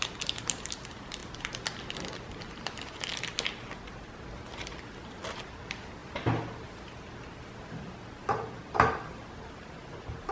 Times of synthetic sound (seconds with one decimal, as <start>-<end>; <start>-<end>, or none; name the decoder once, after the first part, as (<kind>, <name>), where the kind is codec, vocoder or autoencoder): none